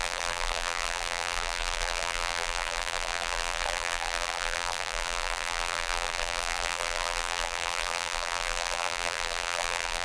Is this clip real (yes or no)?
no